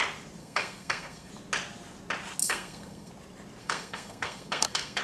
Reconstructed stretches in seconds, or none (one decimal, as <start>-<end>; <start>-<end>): 0.4-1.3; 2.4-3.1; 3.6-5.0